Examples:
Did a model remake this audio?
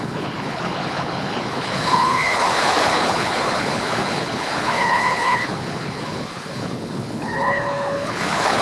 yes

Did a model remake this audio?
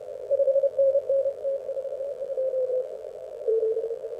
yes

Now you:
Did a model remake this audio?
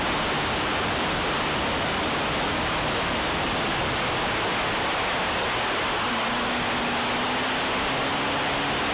no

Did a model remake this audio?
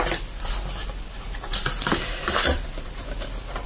no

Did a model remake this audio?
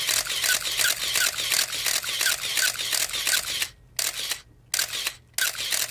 no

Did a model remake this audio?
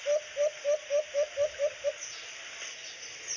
no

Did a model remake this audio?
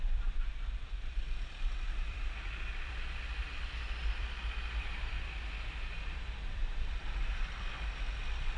yes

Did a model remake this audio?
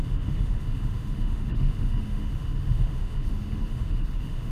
yes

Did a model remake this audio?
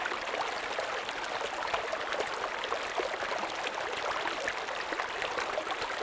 no